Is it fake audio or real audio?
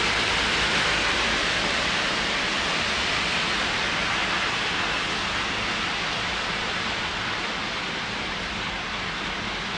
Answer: fake